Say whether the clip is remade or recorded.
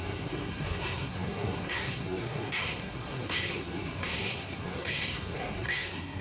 remade